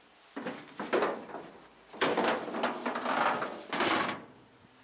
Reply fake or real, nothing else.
real